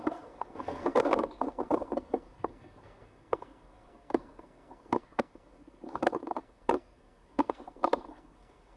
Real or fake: fake